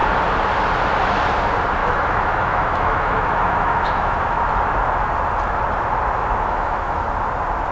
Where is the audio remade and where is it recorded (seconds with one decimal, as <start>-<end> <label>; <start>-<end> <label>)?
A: 0.0-1.8 recorded; 1.8-4.4 remade; 4.4-6.2 recorded; 6.2-7.0 remade; 7.0-7.7 recorded